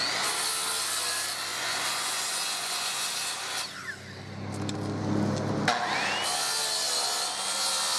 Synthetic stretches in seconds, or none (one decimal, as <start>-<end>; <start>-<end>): 1.5-3.1